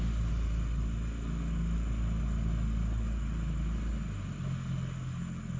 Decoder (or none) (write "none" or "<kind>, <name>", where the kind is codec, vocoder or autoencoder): none